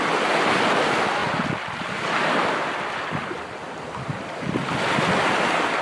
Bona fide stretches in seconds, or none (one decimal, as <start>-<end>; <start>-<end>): 0.0-5.8